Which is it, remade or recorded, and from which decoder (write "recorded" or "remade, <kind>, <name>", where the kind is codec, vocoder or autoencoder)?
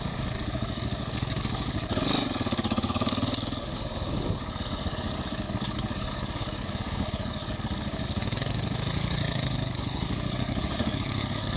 remade, codec, DAC